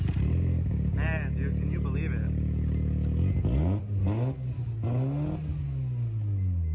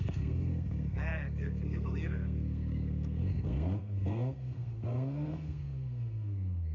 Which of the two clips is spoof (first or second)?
second